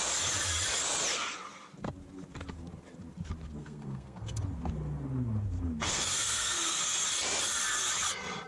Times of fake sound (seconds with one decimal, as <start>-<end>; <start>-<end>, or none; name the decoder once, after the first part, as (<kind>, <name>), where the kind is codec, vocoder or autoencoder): 3.6-4.4 (codec, SNAC); 5.9-6.8